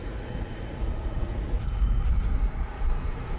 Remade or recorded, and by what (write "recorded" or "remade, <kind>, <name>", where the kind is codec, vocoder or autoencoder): remade, vocoder, Vocos